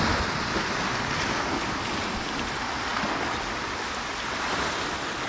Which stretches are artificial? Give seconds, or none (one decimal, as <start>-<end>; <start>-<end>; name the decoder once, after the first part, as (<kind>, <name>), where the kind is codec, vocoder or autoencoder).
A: none